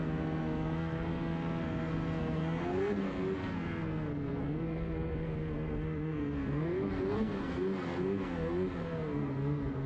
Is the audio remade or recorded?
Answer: remade